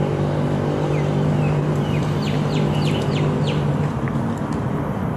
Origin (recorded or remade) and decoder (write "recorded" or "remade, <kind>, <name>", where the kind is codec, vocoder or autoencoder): recorded